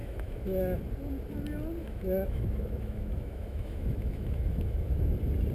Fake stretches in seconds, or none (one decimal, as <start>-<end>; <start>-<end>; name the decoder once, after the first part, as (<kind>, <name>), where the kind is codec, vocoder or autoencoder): 0.0-0.8 (autoencoder, DAC-VAE); 1.8-5.1